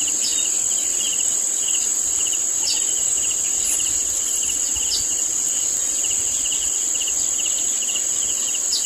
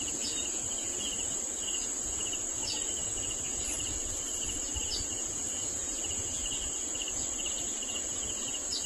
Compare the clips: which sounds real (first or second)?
first